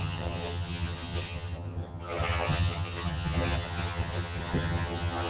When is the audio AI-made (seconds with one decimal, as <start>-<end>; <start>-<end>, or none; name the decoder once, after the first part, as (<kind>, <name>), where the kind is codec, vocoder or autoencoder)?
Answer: 0.0-5.3 (vocoder, HiFi-GAN)